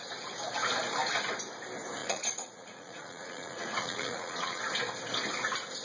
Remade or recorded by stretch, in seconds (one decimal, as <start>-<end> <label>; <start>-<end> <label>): 0.0-2.0 recorded; 2.0-4.6 remade; 4.6-5.8 recorded